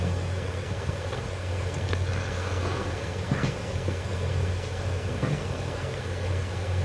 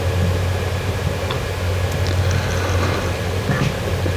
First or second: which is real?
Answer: second